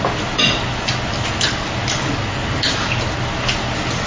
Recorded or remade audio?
recorded